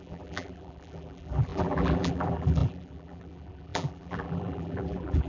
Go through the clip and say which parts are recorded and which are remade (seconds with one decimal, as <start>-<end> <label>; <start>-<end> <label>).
0.0-5.3 remade